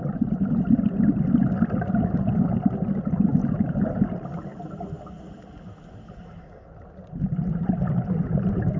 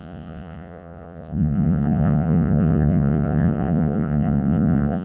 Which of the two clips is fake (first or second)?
second